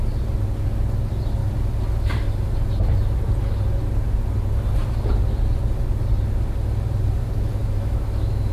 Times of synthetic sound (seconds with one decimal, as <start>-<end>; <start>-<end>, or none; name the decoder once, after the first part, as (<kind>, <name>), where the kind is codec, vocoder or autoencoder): 7.6-8.5 (autoencoder, DAC-VAE)